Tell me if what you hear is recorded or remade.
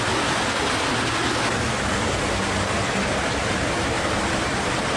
recorded